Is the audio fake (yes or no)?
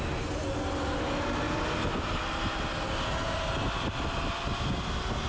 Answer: no